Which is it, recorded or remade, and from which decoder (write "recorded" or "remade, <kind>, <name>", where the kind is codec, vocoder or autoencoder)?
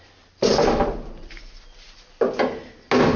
recorded